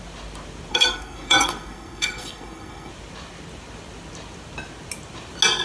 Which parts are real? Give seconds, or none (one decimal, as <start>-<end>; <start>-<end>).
0.0-0.7; 2.9-5.6